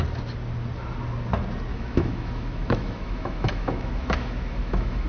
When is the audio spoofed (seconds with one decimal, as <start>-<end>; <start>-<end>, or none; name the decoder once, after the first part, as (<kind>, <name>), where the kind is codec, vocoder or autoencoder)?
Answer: 1.7-5.1 (autoencoder, DAC-VAE)